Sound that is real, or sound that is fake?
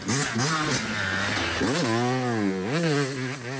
real